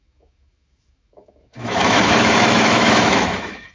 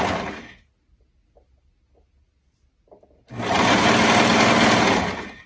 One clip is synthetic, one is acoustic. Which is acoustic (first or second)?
second